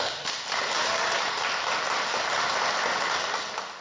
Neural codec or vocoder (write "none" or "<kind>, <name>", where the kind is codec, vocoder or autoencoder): none